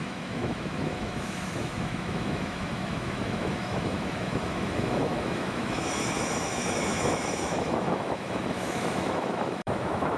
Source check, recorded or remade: remade